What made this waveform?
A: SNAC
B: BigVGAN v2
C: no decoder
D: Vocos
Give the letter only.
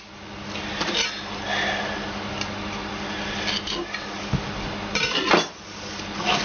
B